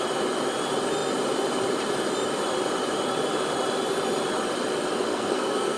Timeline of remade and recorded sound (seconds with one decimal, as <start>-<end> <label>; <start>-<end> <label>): 0.0-5.1 recorded; 5.1-5.8 remade